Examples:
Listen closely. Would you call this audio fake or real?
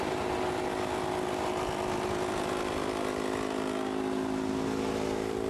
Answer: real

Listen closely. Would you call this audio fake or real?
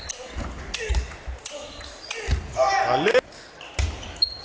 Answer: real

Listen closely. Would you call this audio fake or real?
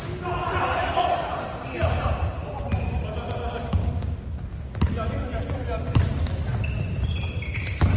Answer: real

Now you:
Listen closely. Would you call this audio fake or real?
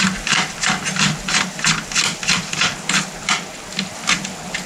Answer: real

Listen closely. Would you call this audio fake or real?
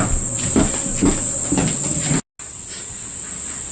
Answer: real